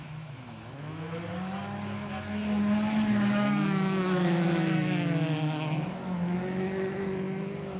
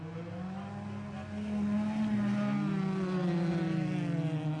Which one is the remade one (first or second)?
first